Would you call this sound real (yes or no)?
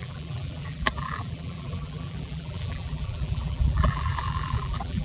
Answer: no